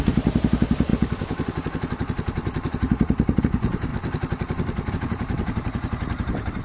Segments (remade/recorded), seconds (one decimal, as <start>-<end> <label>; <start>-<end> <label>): 0.0-3.9 remade; 3.9-4.9 recorded; 4.9-6.6 remade